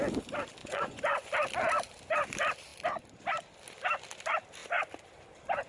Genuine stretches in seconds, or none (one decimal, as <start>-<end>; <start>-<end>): 0.0-0.6; 1.3-5.7